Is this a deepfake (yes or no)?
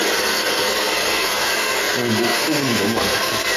yes